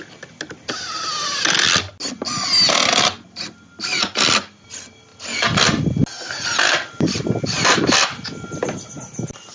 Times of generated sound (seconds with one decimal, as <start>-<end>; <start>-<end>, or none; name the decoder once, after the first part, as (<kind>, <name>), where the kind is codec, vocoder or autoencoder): none